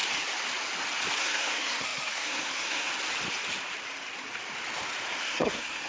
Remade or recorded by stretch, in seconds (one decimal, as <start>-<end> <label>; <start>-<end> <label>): 0.0-1.2 recorded; 1.2-2.9 remade; 2.9-5.2 recorded; 5.2-5.9 remade